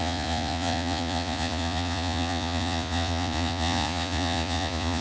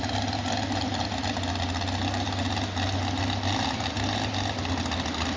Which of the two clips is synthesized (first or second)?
first